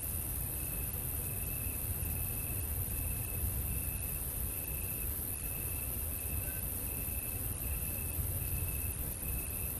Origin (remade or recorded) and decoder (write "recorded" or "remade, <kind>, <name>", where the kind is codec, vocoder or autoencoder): remade, vocoder, BigVGAN v2